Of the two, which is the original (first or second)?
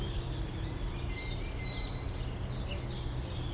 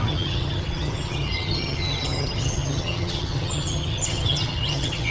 first